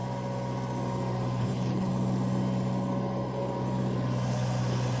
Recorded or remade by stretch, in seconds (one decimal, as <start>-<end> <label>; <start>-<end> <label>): 0.0-1.4 recorded; 1.4-1.9 remade; 1.9-5.0 recorded